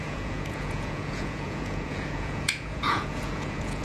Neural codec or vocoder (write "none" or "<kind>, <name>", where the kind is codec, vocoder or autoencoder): vocoder, Vocos